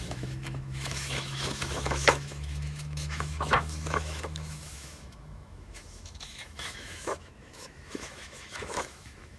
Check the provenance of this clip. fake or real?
fake